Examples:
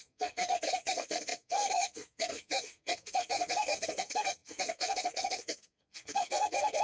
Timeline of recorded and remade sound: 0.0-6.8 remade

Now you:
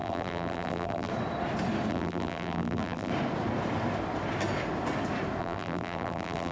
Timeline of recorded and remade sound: 0.0-1.1 remade; 1.1-1.9 recorded; 1.9-3.1 remade; 3.1-5.4 recorded; 5.4-6.5 remade